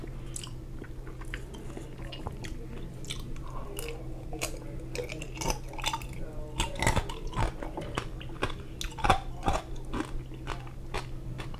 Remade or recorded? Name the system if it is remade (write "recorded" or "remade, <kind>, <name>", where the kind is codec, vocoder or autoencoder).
recorded